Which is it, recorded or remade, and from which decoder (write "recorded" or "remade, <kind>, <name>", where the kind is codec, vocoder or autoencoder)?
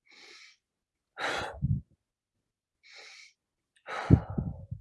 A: recorded